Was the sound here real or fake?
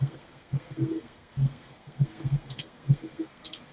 fake